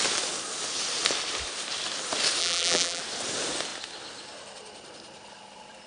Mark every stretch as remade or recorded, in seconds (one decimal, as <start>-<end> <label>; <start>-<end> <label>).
0.0-2.4 recorded; 2.4-3.0 remade; 3.0-5.9 recorded

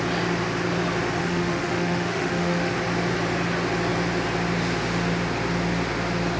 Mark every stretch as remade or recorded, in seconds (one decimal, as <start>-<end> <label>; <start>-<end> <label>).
0.0-1.2 recorded; 1.2-2.7 remade; 2.7-6.4 recorded

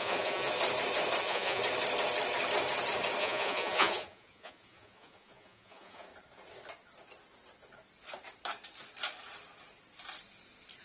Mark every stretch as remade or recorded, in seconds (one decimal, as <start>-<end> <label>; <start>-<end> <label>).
0.0-0.5 remade; 0.5-1.2 recorded; 1.2-1.6 remade; 1.6-3.2 recorded; 3.2-6.1 remade; 6.1-10.8 recorded

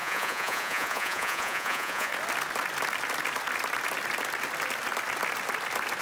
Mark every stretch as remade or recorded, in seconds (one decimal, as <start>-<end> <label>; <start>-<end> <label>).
0.0-2.1 remade; 2.1-6.0 recorded

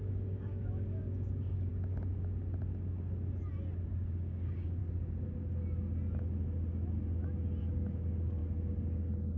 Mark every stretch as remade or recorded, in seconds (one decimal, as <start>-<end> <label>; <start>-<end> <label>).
0.0-1.7 remade; 1.7-3.9 recorded; 3.9-4.8 remade; 4.8-7.6 recorded; 7.6-8.4 remade; 8.4-9.4 recorded

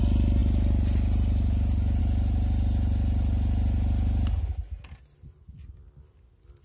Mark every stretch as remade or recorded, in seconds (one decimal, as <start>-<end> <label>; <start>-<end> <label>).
0.0-6.6 recorded